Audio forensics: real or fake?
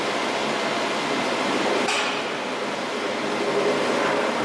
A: real